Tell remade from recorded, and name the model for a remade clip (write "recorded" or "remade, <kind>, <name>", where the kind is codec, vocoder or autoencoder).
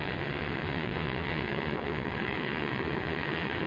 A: remade, vocoder, WaveNeXt